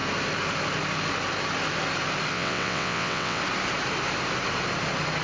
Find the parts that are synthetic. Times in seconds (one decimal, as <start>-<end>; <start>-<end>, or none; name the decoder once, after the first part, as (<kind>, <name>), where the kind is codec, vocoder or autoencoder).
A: 2.3-3.4 (vocoder, WaveNeXt)